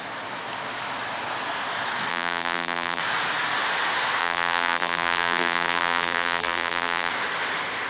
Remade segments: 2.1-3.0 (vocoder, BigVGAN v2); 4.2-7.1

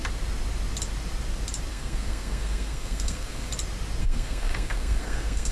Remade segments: 1.7-3.5 (codec, SNAC); 4.0-5.5

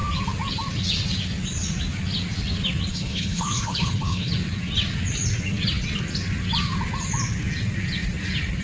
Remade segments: 2.9-4.3 (codec, HILCodec)

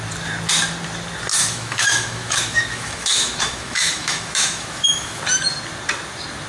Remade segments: 1.3-5.2 (autoencoder, DAC-VAE)

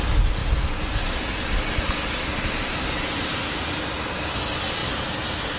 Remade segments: none

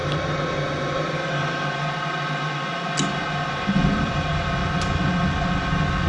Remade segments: 3.7-4.6 (vocoder, BigVGAN v2)

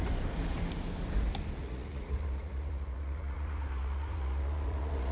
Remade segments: 1.6-5.1 (vocoder, Vocos)